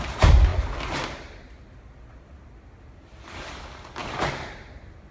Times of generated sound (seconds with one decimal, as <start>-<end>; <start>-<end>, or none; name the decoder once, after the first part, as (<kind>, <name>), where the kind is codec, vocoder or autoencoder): 4.0-5.1 (vocoder, BigVGAN v2)